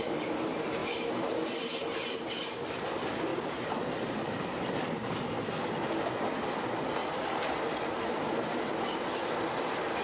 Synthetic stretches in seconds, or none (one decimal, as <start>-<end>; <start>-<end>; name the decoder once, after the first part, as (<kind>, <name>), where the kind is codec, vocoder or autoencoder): 3.3-5.2 (vocoder, BigVGAN v2); 7.0-8.0